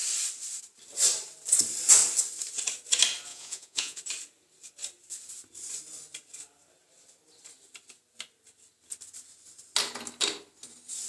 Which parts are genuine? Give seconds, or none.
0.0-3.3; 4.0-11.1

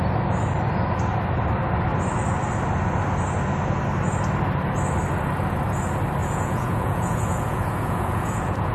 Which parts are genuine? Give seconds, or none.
0.0-6.2